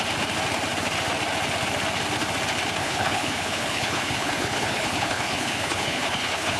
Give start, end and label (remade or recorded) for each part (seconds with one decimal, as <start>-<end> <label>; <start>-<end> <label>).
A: 0.0-2.8 recorded; 2.8-6.6 remade